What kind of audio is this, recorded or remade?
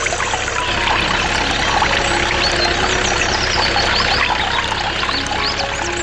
recorded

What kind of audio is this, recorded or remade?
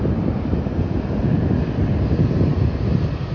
recorded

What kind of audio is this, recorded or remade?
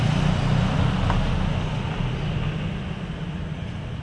recorded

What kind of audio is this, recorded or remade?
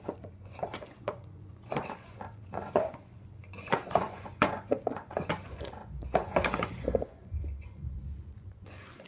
remade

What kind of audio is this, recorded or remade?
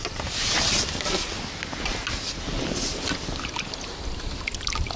recorded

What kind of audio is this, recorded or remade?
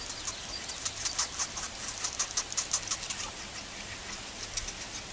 recorded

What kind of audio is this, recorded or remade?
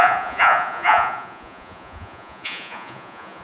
remade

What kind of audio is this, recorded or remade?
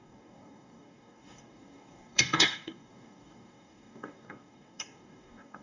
remade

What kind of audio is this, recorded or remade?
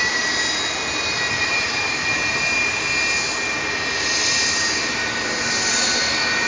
recorded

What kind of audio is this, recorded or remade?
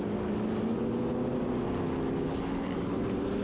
recorded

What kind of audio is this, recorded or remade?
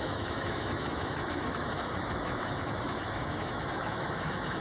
remade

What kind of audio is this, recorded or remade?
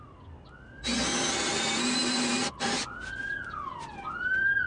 recorded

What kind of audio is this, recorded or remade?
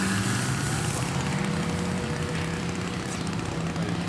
recorded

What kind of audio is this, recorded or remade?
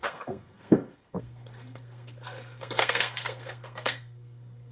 remade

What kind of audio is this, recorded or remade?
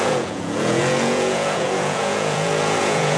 remade